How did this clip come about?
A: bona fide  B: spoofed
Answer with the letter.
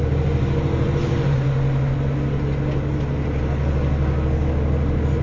A